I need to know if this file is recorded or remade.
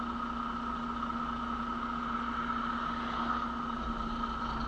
recorded